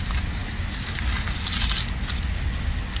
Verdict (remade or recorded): recorded